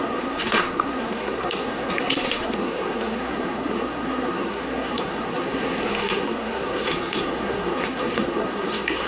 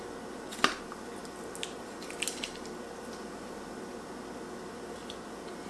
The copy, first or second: first